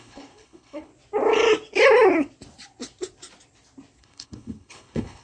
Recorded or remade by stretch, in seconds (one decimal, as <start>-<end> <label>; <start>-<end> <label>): 0.0-0.9 remade; 0.9-4.0 recorded; 4.0-5.2 remade